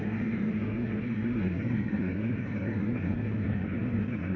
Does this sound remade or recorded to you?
remade